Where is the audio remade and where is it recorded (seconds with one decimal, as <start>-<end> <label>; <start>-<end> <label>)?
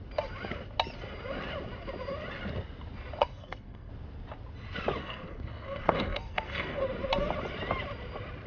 0.0-3.2 recorded; 3.2-3.9 remade; 3.9-5.0 recorded; 5.0-6.8 remade; 6.8-8.5 recorded